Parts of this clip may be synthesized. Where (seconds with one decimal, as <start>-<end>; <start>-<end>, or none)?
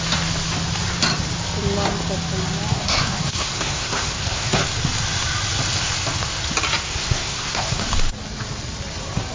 2.7-4.6; 6.8-7.8